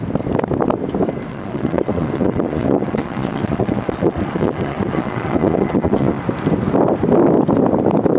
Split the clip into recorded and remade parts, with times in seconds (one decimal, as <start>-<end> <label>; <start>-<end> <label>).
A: 0.0-1.3 recorded; 1.3-6.2 remade; 6.2-8.2 recorded